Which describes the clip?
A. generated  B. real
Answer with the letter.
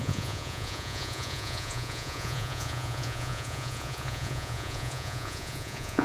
A